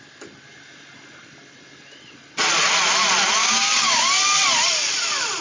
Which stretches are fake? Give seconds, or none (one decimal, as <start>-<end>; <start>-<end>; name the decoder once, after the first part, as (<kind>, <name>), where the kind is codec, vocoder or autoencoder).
3.4-4.0 (codec, DAC)